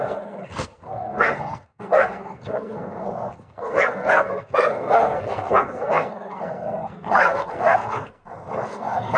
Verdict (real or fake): fake